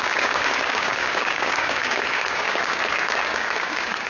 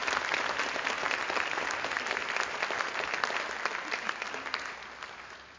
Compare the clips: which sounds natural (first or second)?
second